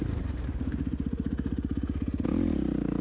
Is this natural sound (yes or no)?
yes